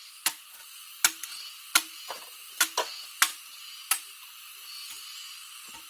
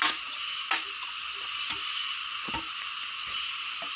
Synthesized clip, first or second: second